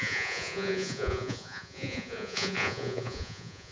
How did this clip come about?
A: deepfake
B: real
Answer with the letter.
A